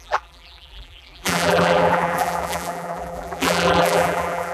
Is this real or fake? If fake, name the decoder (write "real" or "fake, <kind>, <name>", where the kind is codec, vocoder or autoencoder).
fake, vocoder, BigVGAN v2